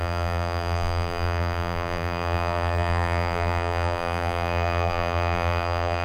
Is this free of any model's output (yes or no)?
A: no